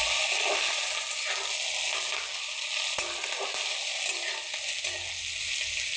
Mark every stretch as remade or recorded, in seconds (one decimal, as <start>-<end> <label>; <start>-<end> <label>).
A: 0.0-6.0 recorded